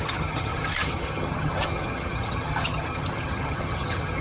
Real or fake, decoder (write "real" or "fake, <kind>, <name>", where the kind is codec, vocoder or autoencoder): fake, vocoder, HiFi-GAN